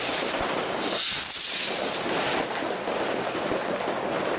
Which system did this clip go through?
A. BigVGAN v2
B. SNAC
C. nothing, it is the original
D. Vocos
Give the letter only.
C